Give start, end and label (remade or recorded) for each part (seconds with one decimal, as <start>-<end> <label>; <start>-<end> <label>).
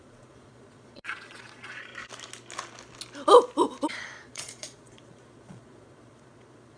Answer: 0.0-1.9 remade; 1.9-3.9 recorded; 3.9-6.8 remade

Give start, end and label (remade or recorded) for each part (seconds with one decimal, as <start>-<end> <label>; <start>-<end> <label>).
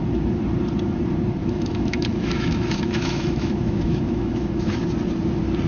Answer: 0.0-1.4 recorded; 1.4-4.8 remade; 4.8-5.7 recorded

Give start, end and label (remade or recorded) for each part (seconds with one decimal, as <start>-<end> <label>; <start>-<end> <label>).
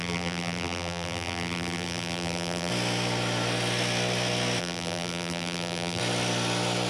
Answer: 0.0-2.7 remade; 2.7-4.6 recorded; 4.6-6.0 remade; 6.0-6.9 recorded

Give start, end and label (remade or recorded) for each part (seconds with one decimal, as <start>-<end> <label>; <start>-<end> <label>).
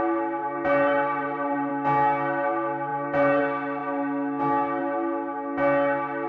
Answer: 0.0-0.4 recorded; 0.4-1.7 remade; 1.7-2.9 recorded; 2.9-3.4 remade; 3.4-6.3 recorded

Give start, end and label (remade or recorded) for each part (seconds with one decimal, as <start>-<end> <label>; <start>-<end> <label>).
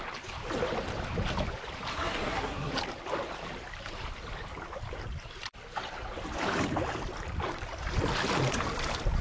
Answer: 0.0-1.9 recorded; 1.9-2.7 remade; 2.7-9.2 recorded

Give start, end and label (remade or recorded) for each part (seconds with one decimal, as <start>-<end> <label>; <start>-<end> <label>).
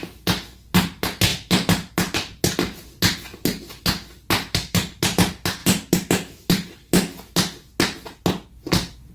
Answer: 0.0-9.1 recorded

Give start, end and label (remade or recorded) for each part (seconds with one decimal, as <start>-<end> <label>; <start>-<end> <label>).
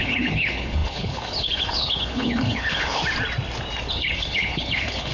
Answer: 0.0-3.0 remade; 3.0-3.9 recorded; 3.9-5.1 remade